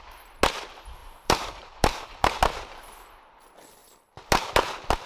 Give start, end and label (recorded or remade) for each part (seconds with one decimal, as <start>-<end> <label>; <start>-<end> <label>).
0.0-1.0 recorded; 1.0-2.3 remade; 2.3-5.1 recorded